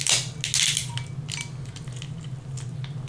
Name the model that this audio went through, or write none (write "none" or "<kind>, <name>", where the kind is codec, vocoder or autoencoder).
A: none